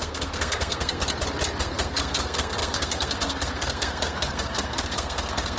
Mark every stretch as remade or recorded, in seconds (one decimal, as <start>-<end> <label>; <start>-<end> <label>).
0.0-1.0 remade; 1.0-1.6 recorded; 1.6-5.6 remade